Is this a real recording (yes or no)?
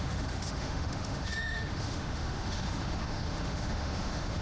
no